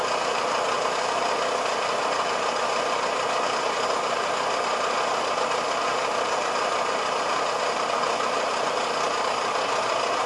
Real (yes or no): yes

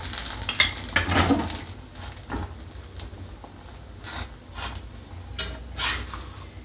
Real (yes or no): yes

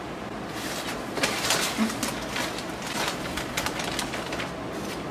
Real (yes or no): yes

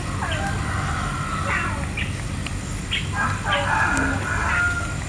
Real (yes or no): yes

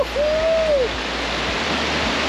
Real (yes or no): yes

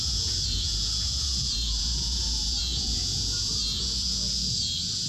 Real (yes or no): no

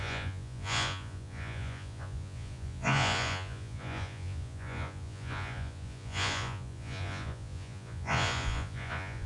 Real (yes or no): no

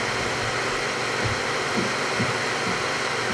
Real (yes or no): yes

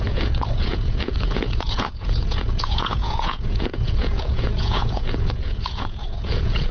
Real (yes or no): no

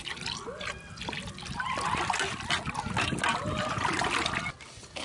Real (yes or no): yes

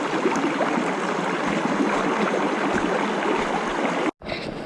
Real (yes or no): yes